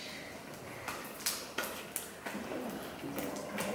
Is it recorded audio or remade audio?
recorded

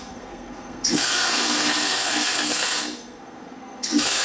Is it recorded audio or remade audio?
remade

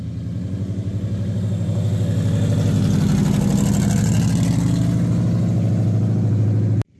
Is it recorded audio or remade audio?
recorded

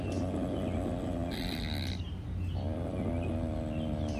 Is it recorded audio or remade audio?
recorded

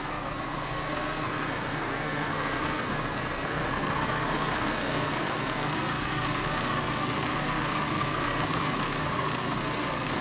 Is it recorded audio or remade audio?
remade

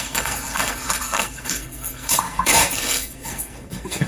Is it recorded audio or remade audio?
remade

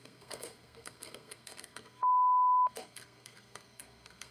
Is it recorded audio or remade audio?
remade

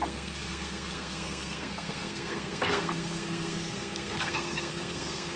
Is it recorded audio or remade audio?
remade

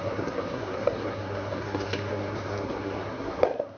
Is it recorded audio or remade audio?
remade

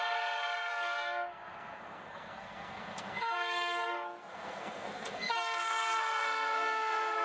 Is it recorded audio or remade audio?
remade